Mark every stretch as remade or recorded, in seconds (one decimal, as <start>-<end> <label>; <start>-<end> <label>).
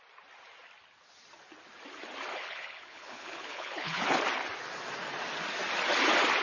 0.0-2.3 recorded; 2.3-4.2 remade; 4.2-6.4 recorded